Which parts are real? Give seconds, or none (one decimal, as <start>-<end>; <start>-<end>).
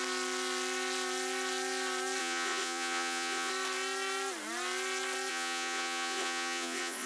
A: 0.0-2.2; 3.5-5.3